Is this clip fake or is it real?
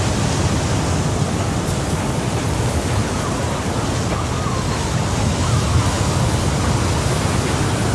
real